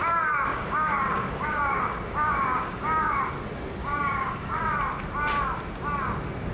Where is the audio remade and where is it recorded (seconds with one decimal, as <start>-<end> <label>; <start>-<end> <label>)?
0.0-0.5 recorded; 0.5-3.2 remade; 3.2-3.8 recorded; 3.8-4.6 remade; 4.6-6.5 recorded